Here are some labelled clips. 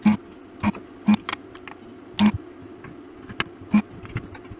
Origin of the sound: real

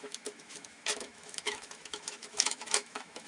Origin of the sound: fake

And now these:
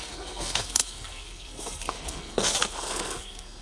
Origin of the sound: fake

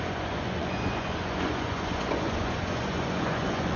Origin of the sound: fake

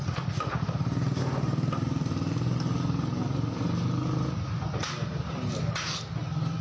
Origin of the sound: real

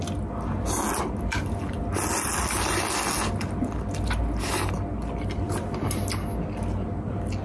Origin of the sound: real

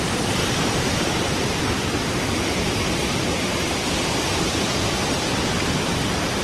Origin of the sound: fake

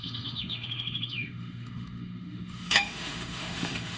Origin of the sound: fake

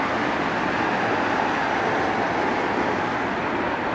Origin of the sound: real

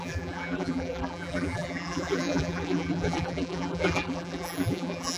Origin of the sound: fake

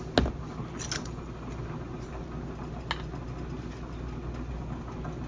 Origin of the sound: real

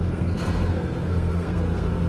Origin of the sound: fake